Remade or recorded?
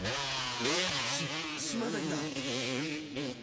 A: remade